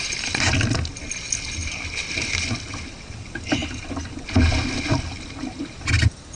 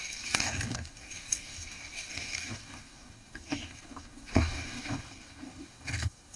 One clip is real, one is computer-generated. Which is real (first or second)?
first